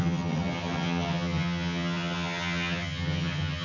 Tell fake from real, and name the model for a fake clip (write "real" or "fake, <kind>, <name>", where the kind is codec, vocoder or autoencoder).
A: fake, vocoder, HiFi-GAN